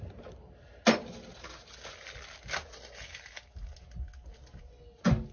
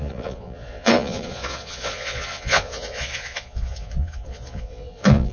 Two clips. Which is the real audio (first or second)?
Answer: first